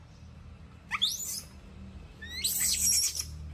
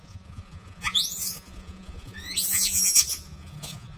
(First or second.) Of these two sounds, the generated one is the second